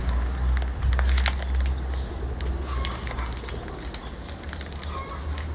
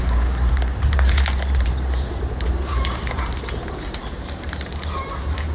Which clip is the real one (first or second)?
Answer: first